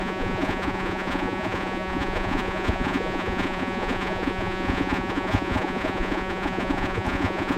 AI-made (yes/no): yes